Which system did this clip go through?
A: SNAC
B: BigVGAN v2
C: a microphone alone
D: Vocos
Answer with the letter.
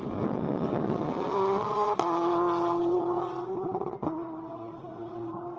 D